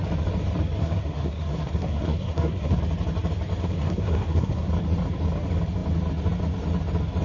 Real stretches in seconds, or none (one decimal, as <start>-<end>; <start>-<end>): 0.0-0.8; 2.8-3.6; 4.7-7.2